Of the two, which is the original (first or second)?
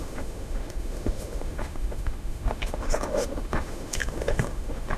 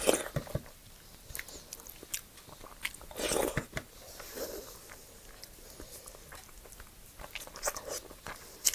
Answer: second